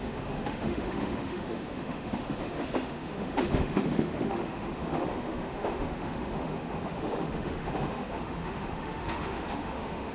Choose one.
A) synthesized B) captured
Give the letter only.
A